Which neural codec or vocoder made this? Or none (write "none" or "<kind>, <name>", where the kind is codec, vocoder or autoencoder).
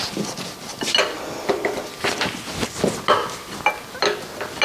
none